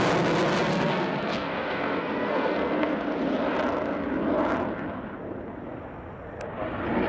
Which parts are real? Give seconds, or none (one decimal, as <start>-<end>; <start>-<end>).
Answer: 0.0-0.7; 2.9-7.1